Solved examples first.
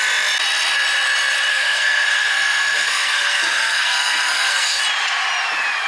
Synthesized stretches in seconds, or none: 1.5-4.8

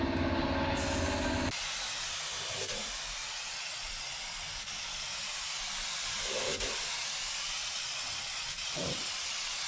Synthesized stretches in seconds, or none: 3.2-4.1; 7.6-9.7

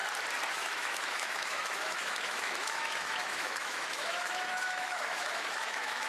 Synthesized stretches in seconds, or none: 0.5-6.1

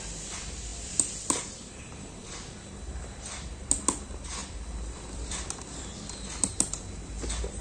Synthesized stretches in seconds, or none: 0.7-1.8; 4.4-5.9